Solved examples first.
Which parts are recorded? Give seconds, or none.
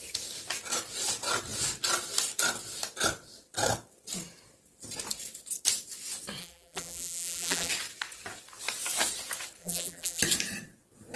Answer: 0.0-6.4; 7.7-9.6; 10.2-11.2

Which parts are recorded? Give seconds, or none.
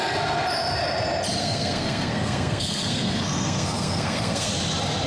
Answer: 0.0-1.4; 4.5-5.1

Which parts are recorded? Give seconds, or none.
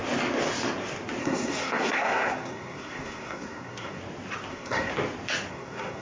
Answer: 0.0-1.2; 4.0-4.5; 4.9-5.5